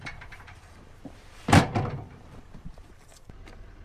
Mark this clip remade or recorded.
remade